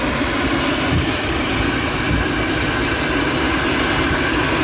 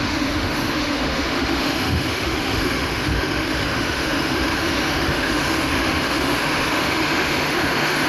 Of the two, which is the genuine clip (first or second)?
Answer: first